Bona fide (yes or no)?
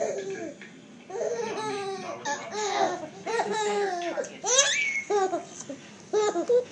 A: yes